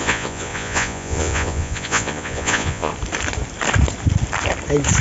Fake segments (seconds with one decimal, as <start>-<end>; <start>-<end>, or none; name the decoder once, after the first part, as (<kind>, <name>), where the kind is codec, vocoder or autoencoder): 0.0-2.9 (vocoder, Vocos)